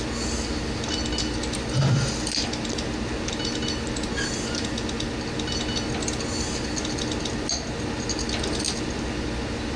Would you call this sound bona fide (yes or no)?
yes